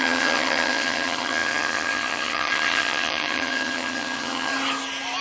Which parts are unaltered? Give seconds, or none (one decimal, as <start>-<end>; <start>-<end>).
4.5-5.2